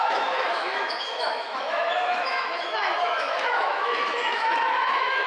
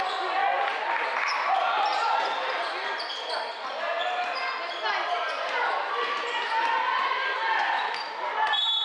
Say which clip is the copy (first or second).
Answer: first